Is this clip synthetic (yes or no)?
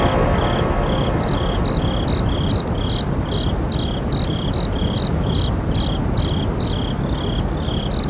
no